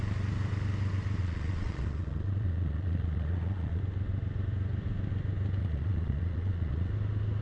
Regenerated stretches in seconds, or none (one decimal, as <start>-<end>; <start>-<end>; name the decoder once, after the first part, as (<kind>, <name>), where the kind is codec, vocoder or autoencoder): 1.2-3.8 (vocoder, Vocos); 5.6-6.9